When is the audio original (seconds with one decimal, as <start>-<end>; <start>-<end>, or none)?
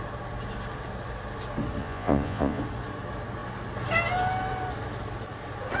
0.0-1.8; 2.6-5.8